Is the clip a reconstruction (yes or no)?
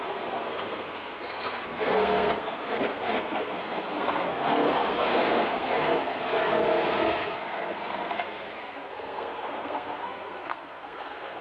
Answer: yes